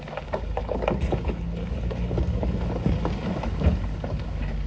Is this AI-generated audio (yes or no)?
yes